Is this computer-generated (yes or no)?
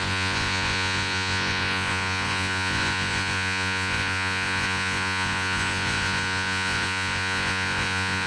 yes